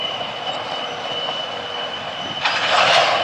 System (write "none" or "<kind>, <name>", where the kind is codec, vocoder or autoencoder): none